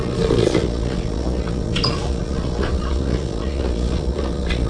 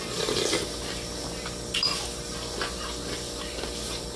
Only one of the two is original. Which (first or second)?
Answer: second